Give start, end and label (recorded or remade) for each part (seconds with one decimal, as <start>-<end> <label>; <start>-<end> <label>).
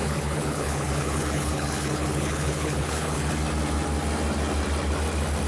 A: 0.0-3.3 remade; 3.3-5.5 recorded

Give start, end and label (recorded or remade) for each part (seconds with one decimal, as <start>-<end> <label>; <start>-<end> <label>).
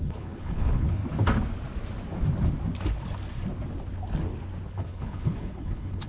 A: 0.0-1.0 remade; 1.0-4.7 recorded; 4.7-6.1 remade